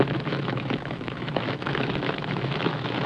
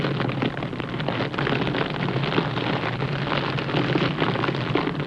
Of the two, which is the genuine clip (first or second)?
second